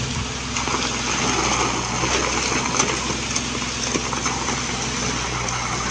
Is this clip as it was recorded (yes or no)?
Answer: yes